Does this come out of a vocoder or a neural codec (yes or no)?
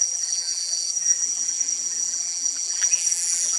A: yes